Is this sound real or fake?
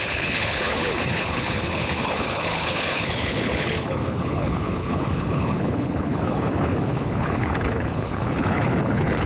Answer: fake